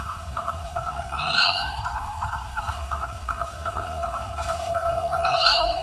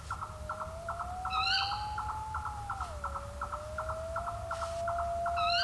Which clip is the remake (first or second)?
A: first